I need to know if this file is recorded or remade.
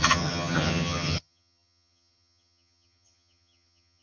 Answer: remade